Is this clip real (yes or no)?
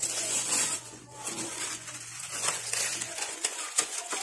no